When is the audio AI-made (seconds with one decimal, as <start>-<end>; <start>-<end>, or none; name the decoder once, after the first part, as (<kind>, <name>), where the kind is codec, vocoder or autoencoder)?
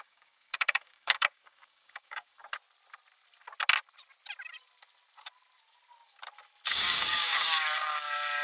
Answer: 0.0-2.5 (codec, DAC); 6.7-8.4